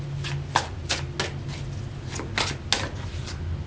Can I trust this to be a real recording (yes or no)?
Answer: yes